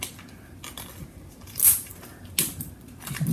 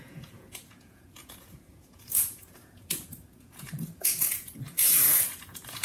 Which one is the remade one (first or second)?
second